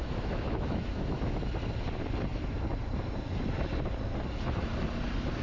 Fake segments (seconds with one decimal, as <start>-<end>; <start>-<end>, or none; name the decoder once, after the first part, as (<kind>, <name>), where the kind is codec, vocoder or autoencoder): 0.0-1.4 (autoencoder, DAC-VAE)